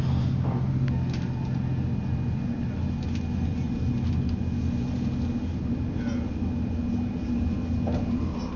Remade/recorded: recorded